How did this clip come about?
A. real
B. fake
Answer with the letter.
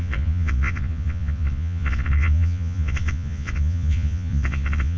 B